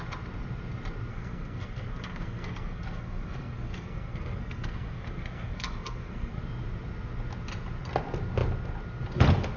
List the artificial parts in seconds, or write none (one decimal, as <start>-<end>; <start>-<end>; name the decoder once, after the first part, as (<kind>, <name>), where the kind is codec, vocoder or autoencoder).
1.1-6.4 (codec, SNAC)